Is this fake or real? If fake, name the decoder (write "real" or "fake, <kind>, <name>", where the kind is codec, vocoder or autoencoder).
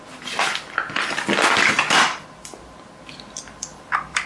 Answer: real